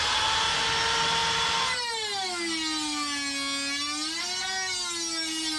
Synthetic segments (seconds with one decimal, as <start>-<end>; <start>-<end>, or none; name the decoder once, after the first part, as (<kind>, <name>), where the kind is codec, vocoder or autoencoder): none